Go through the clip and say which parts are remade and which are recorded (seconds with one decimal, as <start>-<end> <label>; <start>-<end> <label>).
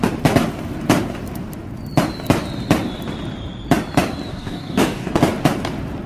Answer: 0.0-4.3 recorded; 4.3-5.1 remade; 5.1-6.1 recorded